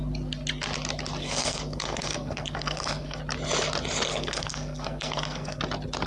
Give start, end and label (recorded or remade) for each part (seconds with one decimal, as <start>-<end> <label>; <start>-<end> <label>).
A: 0.0-1.2 recorded; 1.2-3.2 remade; 3.2-4.1 recorded; 4.1-5.6 remade; 5.6-6.1 recorded